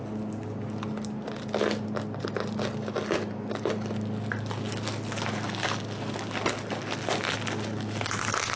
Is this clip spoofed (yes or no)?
no